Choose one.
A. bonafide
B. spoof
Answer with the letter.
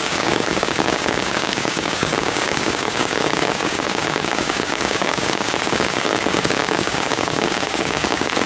B